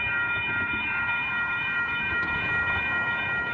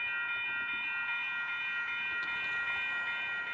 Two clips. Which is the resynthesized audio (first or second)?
first